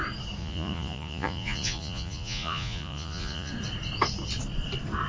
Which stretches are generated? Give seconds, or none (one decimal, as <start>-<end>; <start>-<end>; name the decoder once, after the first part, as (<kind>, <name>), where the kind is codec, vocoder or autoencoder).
0.4-3.5 (vocoder, Vocos)